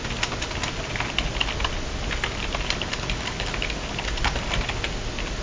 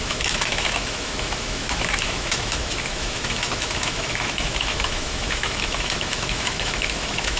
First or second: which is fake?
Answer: second